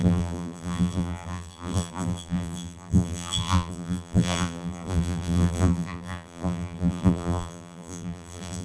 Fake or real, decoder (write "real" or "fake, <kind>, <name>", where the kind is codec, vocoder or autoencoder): fake, vocoder, BigVGAN v2